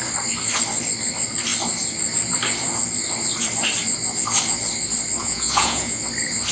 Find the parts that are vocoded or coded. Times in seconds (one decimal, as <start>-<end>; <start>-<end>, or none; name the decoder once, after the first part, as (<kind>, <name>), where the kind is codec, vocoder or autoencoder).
5.2-6.0 (vocoder, Vocos)